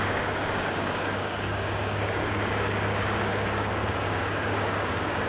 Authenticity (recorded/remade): remade